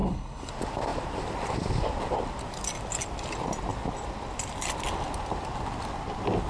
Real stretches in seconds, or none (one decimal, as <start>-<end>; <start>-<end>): 0.5-6.5